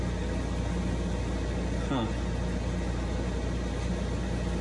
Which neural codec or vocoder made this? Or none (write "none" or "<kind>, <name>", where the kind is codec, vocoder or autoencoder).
none